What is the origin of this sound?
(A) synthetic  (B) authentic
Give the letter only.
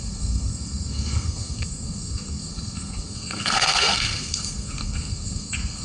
A